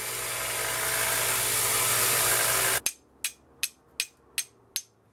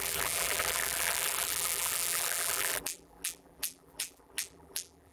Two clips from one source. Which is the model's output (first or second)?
second